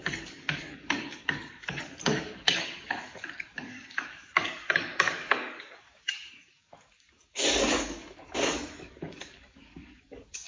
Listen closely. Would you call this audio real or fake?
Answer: fake